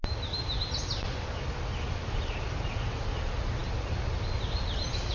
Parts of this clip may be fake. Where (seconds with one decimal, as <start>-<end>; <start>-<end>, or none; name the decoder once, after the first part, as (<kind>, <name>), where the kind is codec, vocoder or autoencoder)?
none

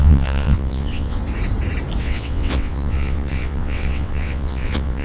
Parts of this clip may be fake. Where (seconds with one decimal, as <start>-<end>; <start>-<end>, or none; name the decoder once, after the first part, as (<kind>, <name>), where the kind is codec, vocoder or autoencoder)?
0.0-1.2 (vocoder, WaveNeXt); 2.0-5.0

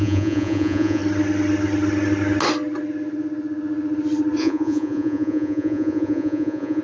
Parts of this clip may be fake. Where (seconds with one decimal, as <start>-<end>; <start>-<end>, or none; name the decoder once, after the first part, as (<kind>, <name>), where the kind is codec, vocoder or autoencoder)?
0.0-1.0 (vocoder, Vocos); 4.4-6.8

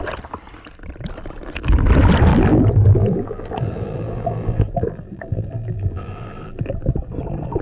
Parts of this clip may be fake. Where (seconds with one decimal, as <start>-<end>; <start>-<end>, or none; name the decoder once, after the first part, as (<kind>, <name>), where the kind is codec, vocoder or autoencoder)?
2.3-6.9 (vocoder, BigVGAN v2)

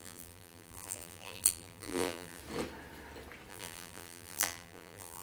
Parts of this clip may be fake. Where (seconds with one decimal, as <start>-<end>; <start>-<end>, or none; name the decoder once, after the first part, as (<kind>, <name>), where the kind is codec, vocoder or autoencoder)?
0.0-2.4 (vocoder, BigVGAN v2); 3.5-5.2

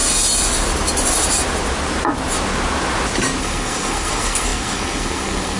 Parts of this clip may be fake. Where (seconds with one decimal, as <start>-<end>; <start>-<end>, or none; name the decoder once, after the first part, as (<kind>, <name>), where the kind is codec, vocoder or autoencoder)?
3.4-5.6 (codec, SNAC)

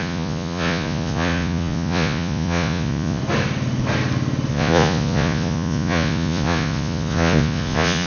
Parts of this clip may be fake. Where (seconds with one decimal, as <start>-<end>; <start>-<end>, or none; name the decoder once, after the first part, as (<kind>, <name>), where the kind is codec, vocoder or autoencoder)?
0.0-3.2 (vocoder, Vocos); 4.5-8.1

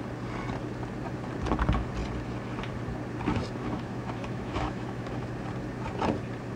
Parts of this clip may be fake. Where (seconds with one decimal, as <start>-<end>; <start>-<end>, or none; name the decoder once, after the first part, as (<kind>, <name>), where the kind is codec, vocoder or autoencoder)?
3.6-5.3 (autoencoder, DAC-VAE)